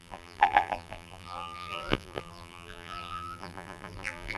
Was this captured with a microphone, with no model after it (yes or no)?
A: no